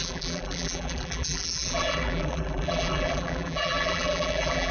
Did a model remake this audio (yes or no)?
yes